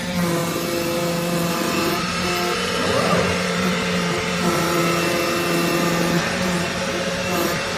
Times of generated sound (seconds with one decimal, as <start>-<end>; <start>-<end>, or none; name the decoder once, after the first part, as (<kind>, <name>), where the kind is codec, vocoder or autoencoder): 0.0-0.4 (vocoder, BigVGAN v2); 1.5-4.8; 5.7-7.8